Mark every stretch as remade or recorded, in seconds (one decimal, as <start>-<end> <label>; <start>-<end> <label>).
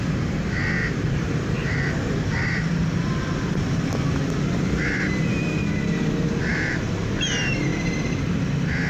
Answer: 0.0-0.8 recorded; 0.8-1.8 remade; 1.8-6.5 recorded; 6.5-7.2 remade; 7.2-7.7 recorded; 7.7-8.3 remade; 8.3-8.9 recorded